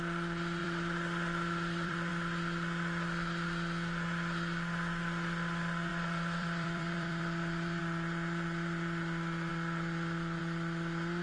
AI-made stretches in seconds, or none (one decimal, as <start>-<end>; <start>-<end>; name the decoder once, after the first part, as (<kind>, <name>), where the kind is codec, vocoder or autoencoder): 0.6-2.1 (vocoder, BigVGAN v2); 5.9-7.8; 9.5-10.4